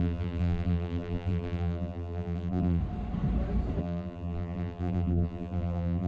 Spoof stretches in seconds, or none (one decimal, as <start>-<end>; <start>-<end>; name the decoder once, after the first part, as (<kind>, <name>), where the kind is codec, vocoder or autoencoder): 0.0-2.8 (vocoder, BigVGAN v2); 3.8-6.1